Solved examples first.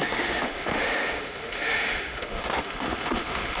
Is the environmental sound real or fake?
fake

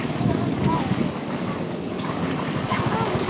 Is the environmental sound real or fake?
fake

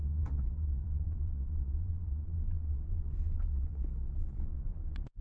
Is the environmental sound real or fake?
fake